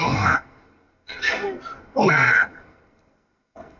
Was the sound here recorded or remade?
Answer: remade